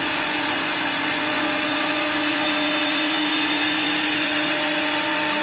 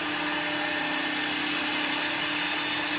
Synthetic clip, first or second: first